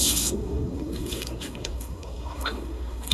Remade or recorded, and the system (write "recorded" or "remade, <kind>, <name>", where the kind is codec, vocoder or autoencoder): remade, codec, SNAC